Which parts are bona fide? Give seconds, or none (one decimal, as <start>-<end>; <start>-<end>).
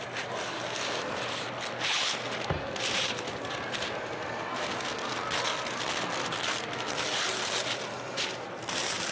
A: 0.0-9.1